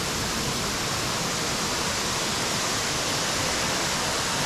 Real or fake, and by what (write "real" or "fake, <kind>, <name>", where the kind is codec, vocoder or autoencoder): real